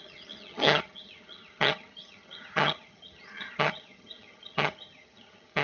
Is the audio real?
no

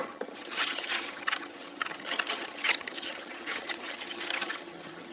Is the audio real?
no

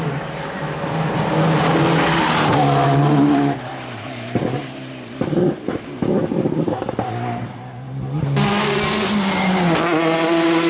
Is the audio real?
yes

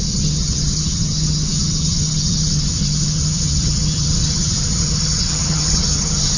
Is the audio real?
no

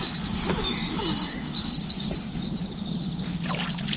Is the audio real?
yes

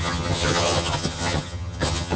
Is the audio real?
no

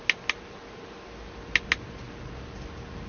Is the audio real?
yes